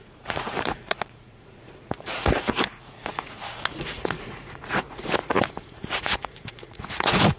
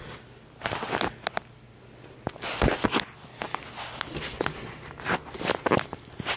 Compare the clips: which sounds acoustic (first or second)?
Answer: second